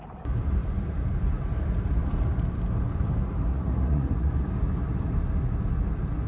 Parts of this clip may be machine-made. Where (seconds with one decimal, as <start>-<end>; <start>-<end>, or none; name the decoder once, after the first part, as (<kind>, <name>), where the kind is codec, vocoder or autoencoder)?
3.5-4.3 (vocoder, Vocos)